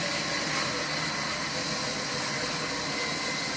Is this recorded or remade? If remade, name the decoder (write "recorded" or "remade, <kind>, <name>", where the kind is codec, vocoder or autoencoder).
recorded